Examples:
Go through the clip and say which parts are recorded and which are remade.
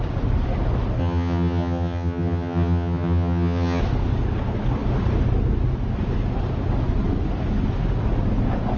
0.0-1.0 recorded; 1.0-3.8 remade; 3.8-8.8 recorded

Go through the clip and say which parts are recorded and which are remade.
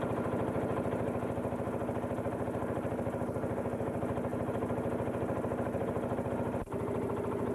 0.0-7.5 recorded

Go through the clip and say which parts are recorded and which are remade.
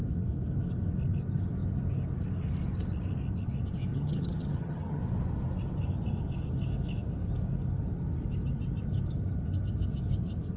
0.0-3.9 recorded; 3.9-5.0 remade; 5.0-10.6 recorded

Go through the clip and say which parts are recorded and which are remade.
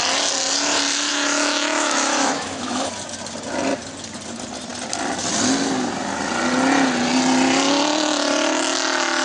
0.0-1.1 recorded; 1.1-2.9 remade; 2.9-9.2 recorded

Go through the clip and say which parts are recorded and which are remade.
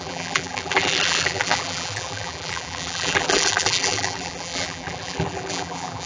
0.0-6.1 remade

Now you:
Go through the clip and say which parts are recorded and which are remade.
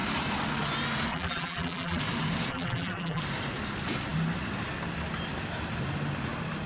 0.0-1.1 recorded; 1.1-2.0 remade; 2.0-2.5 recorded; 2.5-3.2 remade; 3.2-6.7 recorded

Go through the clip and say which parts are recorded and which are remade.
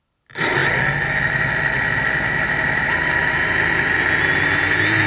0.0-5.1 recorded